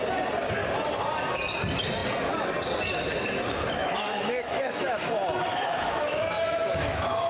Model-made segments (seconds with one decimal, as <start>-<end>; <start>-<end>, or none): 3.8-5.1; 5.5-7.3